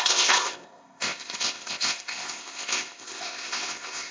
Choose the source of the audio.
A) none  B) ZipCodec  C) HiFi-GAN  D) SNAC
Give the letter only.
B